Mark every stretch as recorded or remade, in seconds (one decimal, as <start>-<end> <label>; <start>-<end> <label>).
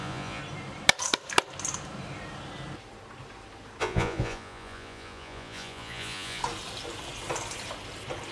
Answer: 0.0-0.4 remade; 0.4-3.8 recorded; 3.8-6.4 remade; 6.4-8.3 recorded